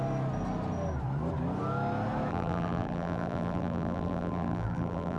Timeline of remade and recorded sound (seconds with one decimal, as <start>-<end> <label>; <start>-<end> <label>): 0.0-2.3 recorded; 2.3-5.2 remade